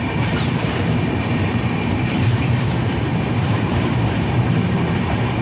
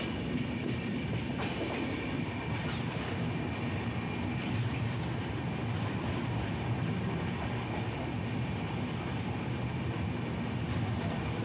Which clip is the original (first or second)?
second